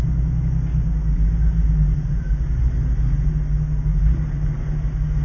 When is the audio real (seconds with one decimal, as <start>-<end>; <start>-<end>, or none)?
0.0-0.7; 3.3-3.9; 4.6-5.2